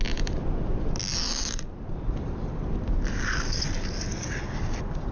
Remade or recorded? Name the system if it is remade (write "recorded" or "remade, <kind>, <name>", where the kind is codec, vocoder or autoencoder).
recorded